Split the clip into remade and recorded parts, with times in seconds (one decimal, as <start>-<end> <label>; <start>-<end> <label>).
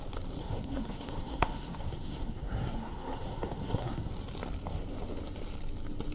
0.0-0.4 recorded; 0.4-4.1 remade; 4.1-6.1 recorded